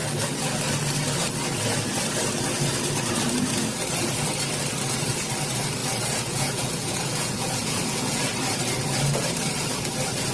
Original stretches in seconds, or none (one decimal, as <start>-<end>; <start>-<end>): 0.0-5.8; 8.3-10.3